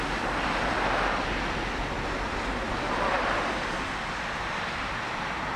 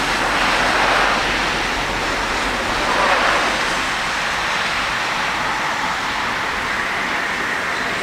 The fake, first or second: first